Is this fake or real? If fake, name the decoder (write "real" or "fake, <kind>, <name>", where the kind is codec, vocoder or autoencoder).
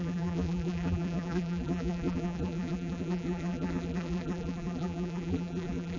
fake, vocoder, BigVGAN v2